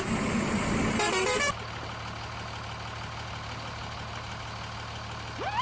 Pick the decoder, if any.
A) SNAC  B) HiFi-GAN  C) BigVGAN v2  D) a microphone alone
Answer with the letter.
D